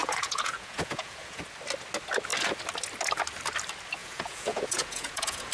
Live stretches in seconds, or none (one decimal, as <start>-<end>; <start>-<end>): 1.4-4.0

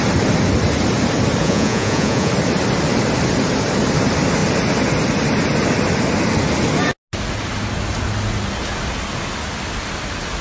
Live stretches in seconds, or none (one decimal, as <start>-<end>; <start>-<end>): 0.0-1.4; 2.3-10.4